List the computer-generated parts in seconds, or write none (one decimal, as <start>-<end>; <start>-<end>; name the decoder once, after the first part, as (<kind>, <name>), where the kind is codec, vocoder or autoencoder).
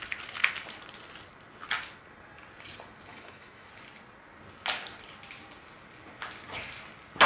3.1-3.7 (autoencoder, DAC-VAE)